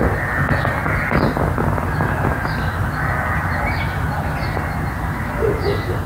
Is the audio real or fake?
real